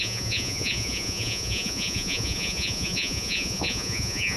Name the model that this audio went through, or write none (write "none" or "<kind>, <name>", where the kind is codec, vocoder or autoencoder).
vocoder, Vocos